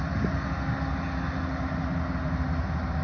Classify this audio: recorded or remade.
recorded